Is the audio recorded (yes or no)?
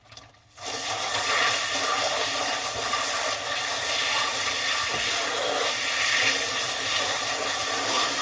no